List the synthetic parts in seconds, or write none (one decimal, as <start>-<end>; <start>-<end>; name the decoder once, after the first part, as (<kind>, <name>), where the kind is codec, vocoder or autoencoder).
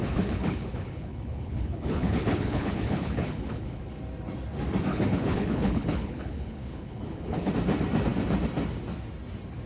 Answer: 0.0-3.8 (codec, HILCodec); 4.9-7.5